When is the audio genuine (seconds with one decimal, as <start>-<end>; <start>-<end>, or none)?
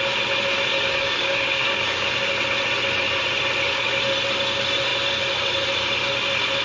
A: 0.0-0.7; 2.3-6.6